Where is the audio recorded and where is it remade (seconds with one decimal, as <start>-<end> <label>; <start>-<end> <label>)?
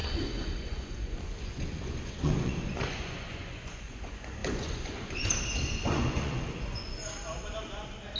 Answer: 0.0-7.0 remade; 7.0-8.2 recorded